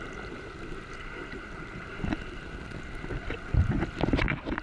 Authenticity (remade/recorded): recorded